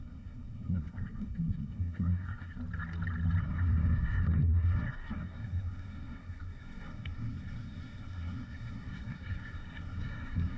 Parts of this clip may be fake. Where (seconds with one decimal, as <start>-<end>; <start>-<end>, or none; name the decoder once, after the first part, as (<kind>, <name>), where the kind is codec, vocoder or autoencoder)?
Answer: 0.0-2.6 (codec, SNAC); 3.4-10.6